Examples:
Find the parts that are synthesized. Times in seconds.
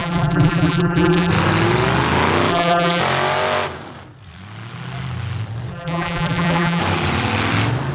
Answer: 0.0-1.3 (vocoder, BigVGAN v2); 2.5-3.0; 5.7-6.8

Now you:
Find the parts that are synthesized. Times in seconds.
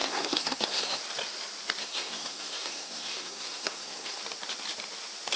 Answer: 0.0-1.0 (codec, SNAC); 1.8-4.2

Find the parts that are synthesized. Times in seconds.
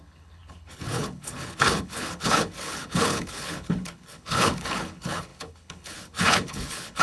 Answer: 0.0-7.0 (codec, HILCodec)